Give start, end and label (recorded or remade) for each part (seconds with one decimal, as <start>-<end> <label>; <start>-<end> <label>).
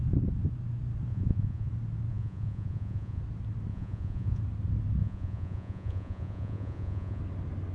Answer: 0.0-1.1 recorded; 1.1-1.7 remade; 1.7-2.1 recorded; 2.1-3.2 remade; 3.2-3.7 recorded; 3.7-4.4 remade; 4.4-5.0 recorded; 5.0-7.2 remade; 7.2-7.7 recorded